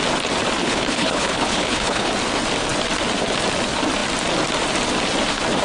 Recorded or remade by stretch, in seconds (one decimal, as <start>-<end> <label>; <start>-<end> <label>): 0.0-0.6 recorded; 0.6-2.1 remade; 2.1-5.6 recorded